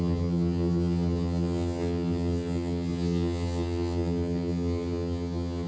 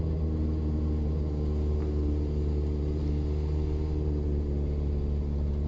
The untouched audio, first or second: second